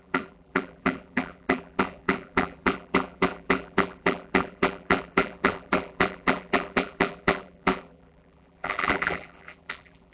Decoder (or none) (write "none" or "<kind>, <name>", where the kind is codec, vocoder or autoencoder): vocoder, BigVGAN v2